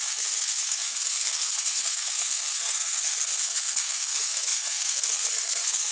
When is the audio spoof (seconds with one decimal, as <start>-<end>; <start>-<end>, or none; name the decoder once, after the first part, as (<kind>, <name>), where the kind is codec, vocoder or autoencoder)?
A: 0.0-5.9 (codec, SNAC)